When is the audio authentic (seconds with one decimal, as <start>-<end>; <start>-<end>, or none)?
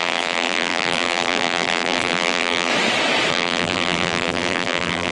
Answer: 2.7-3.3